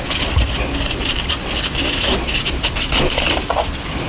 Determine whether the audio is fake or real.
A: real